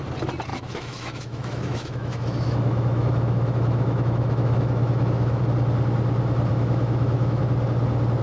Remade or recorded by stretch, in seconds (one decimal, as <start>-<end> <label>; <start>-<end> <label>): 0.0-0.5 recorded; 0.5-5.4 remade; 5.4-6.5 recorded; 6.5-7.4 remade; 7.4-8.2 recorded